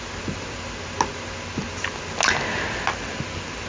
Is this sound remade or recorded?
recorded